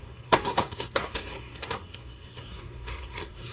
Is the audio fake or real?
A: fake